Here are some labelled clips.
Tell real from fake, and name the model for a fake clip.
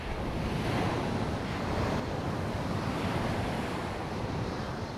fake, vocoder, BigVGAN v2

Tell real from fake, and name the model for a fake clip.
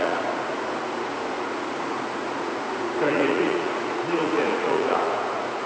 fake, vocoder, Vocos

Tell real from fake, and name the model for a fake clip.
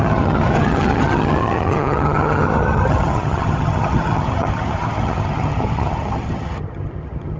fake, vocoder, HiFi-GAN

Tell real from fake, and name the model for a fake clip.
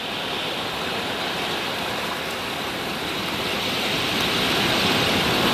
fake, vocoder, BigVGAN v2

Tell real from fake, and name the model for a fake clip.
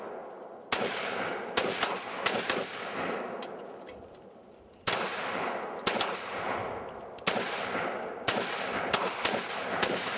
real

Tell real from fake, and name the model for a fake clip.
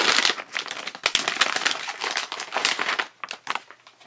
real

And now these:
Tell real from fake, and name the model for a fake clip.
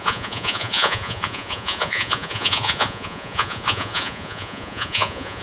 fake, vocoder, Vocos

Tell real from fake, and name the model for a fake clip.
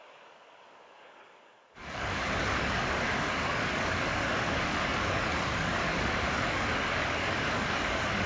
fake, codec, DAC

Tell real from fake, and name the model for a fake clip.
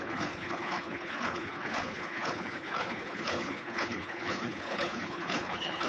fake, codec, HILCodec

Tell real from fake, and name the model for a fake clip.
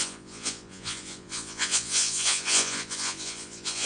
fake, vocoder, Vocos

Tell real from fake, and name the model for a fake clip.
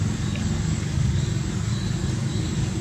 fake, codec, DAC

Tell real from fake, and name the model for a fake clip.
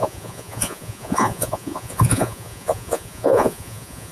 fake, vocoder, Vocos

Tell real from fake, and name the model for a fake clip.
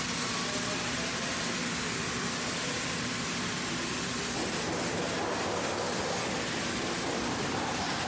real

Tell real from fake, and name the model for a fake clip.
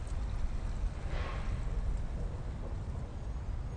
real